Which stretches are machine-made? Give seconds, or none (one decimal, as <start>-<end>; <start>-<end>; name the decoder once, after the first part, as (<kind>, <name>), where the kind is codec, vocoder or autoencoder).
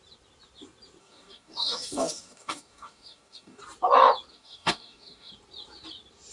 1.0-3.6 (codec, DAC); 4.3-5.3